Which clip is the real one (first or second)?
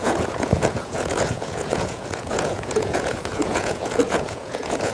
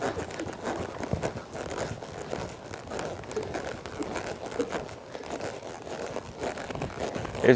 second